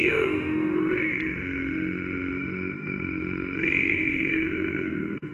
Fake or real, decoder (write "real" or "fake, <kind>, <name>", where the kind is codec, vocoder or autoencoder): fake, autoencoder, DAC-VAE